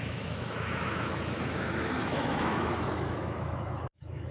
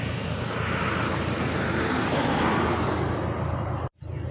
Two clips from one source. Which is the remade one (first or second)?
first